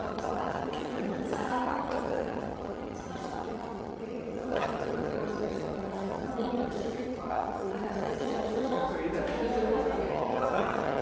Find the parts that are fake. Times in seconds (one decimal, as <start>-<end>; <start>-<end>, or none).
0.0-8.8; 10.1-11.0